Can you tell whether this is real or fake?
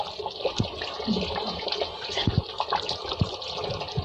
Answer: real